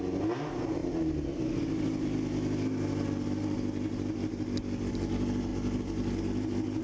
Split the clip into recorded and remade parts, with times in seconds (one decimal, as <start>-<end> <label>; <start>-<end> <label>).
0.0-6.8 recorded